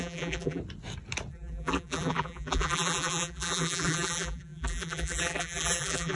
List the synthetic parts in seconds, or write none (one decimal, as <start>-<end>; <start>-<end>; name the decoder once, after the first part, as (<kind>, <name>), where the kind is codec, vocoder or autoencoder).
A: 0.0-0.6 (vocoder, BigVGAN v2); 1.3-6.2